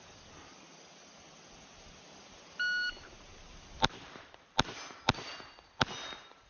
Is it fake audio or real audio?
real